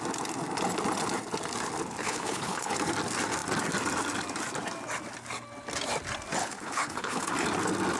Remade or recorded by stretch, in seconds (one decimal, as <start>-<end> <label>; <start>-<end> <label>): 0.0-2.0 recorded; 2.0-2.7 remade; 2.7-6.4 recorded; 6.4-7.3 remade; 7.3-8.0 recorded

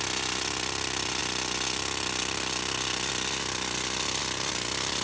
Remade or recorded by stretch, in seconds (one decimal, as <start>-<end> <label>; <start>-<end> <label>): 0.0-5.0 recorded